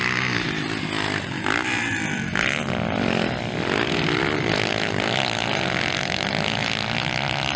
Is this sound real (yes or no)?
yes